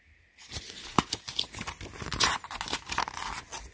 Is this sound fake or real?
real